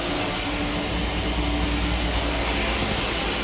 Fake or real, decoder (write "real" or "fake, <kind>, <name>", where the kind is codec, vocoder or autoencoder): real